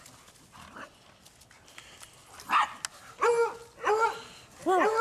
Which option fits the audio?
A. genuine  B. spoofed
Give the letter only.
A